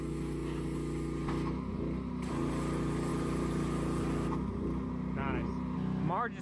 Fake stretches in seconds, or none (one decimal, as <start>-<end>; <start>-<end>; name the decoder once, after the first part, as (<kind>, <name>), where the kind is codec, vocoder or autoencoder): none